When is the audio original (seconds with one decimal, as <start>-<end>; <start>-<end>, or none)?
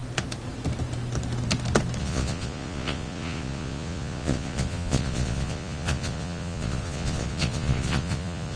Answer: 0.0-2.0